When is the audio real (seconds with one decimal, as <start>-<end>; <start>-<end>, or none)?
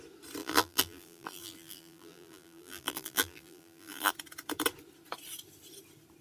0.0-0.4; 4.1-6.2